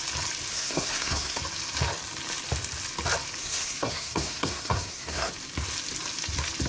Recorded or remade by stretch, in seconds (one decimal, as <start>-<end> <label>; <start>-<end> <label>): 0.0-0.5 recorded; 0.5-1.4 remade; 1.4-3.4 recorded; 3.4-5.3 remade; 5.3-6.7 recorded